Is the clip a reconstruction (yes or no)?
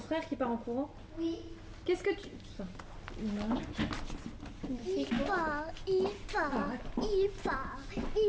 no